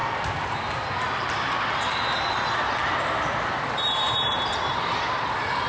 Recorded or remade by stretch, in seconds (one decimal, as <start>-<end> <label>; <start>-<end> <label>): 0.0-2.8 recorded; 2.8-4.2 remade; 4.2-4.7 recorded; 4.7-5.7 remade